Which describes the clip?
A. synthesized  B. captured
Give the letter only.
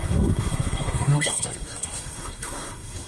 A